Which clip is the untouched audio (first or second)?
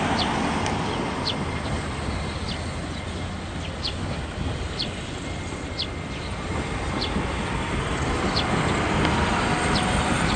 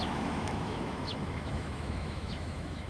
first